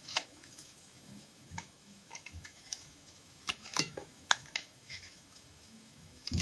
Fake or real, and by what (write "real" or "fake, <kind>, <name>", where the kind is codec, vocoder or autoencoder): fake, autoencoder, DAC-VAE